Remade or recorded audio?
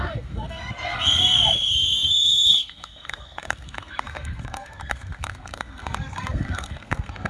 remade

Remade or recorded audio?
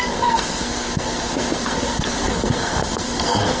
remade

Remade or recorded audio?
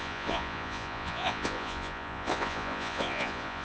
remade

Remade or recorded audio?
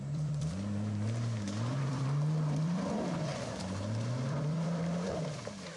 remade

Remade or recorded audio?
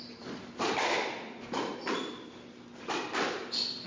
recorded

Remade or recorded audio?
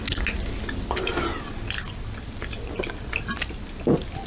recorded